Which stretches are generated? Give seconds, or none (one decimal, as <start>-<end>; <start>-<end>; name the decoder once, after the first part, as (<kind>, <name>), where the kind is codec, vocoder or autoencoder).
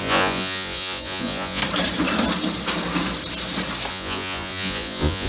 0.0-1.6 (vocoder, Vocos); 3.9-5.3